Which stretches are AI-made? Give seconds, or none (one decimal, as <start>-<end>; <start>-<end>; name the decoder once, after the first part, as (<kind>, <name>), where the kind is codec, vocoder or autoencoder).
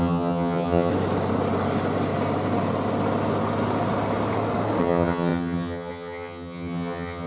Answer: 0.0-0.9 (vocoder, HiFi-GAN); 4.8-7.3